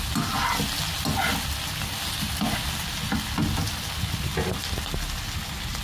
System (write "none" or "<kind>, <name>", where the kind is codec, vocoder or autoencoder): none